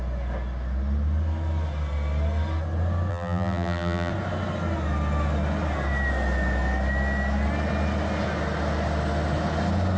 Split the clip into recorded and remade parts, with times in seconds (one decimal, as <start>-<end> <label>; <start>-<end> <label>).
0.0-3.1 recorded; 3.1-4.1 remade; 4.1-10.0 recorded